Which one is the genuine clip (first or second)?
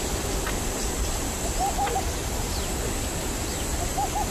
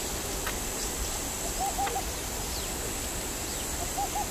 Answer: second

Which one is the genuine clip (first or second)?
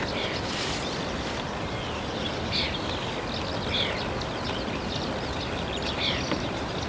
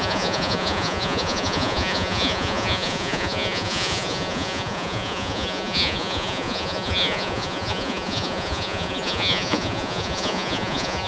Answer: first